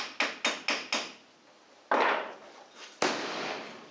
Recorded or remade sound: recorded